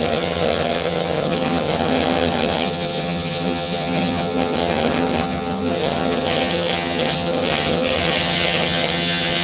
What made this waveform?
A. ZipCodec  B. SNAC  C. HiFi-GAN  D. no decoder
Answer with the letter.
C